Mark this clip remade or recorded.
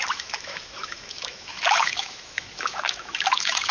remade